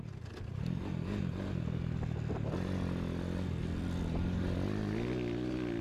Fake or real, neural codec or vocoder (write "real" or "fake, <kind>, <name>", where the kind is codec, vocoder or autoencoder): real